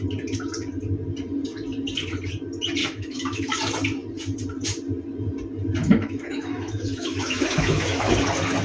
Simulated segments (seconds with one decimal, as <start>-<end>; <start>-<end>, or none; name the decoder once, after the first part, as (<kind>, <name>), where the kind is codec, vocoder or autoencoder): 2.8-3.6 (autoencoder, DAC-VAE); 5.8-8.1